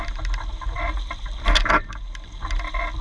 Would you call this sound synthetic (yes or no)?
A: no